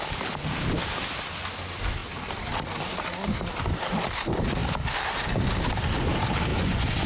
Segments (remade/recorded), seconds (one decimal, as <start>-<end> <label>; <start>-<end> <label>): 0.0-6.5 recorded; 6.5-7.1 remade